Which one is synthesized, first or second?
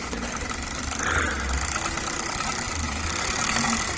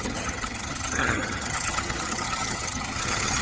second